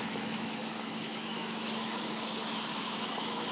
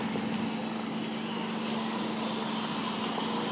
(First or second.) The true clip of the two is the second